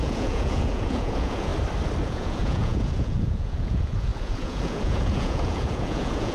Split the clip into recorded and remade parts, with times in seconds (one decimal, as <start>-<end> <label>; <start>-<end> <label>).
0.0-1.5 remade; 1.5-2.0 recorded; 2.0-6.3 remade

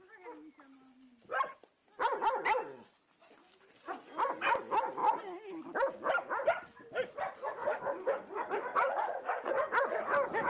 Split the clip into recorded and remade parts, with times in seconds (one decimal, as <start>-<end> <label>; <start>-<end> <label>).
0.0-8.7 recorded; 8.7-9.5 remade; 9.5-10.5 recorded

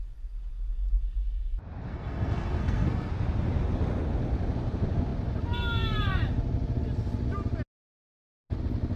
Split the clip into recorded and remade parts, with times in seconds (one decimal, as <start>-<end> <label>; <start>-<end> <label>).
0.0-1.9 recorded; 1.9-3.1 remade; 3.1-9.0 recorded

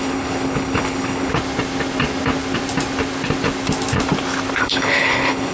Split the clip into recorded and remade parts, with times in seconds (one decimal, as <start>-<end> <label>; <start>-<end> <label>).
0.0-1.3 remade; 1.3-4.6 recorded; 4.6-5.5 remade

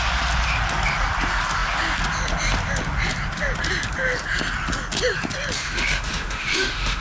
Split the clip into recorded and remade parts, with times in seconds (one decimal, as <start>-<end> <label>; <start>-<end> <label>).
0.0-5.6 recorded; 5.6-7.0 remade

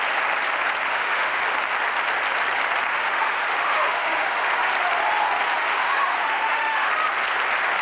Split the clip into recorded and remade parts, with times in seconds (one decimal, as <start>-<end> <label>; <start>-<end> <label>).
0.0-0.9 recorded; 0.9-1.4 remade; 1.4-2.9 recorded; 2.9-4.4 remade; 4.4-5.5 recorded; 5.5-6.9 remade; 6.9-7.8 recorded

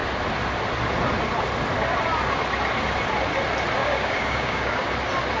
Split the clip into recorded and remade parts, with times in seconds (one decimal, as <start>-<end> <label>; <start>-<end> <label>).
0.0-3.8 recorded; 3.8-4.9 remade; 4.9-5.4 recorded